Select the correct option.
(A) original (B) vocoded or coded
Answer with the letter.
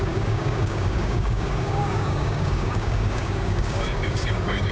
B